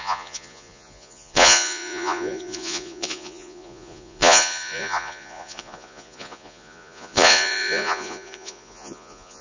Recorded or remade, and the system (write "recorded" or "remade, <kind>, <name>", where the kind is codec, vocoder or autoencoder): remade, vocoder, Vocos